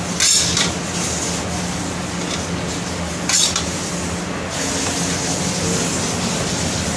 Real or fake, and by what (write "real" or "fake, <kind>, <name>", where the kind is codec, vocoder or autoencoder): real